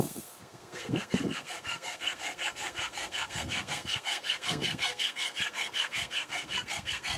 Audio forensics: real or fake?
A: fake